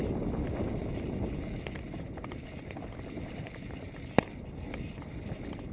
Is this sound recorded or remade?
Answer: recorded